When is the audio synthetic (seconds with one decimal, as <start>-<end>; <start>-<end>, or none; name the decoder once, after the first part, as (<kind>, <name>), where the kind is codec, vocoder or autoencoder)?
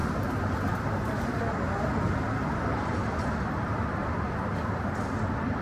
none